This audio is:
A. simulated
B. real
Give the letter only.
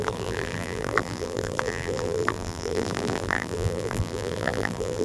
A